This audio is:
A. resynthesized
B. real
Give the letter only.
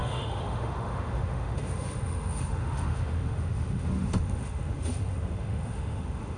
A